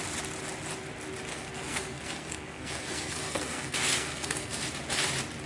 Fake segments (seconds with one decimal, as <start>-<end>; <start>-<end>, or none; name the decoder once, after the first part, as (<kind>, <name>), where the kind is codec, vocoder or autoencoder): 1.3-4.6 (codec, SNAC)